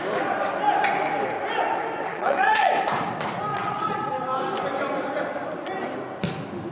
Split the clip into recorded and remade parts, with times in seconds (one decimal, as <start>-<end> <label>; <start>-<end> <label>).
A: 0.0-2.1 recorded; 2.1-2.7 remade; 2.7-3.5 recorded; 3.5-4.1 remade; 4.1-6.7 recorded